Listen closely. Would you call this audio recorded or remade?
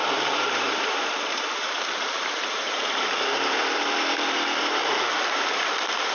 remade